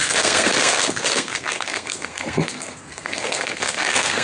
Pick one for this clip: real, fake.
fake